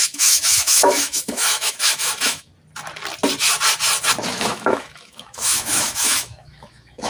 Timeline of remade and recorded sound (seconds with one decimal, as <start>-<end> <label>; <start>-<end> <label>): 0.0-2.5 remade; 2.5-4.3 recorded; 4.3-7.1 remade

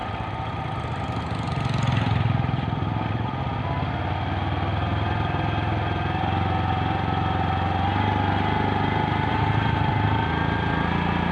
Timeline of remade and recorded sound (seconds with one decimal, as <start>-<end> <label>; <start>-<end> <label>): 0.0-11.3 recorded

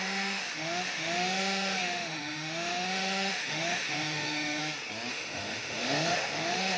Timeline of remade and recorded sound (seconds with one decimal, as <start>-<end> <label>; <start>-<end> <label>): 0.0-4.6 remade; 4.6-5.1 recorded; 5.1-6.8 remade

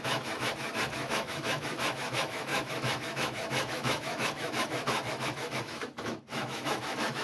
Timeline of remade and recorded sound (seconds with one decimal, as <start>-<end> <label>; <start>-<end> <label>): 0.0-7.2 remade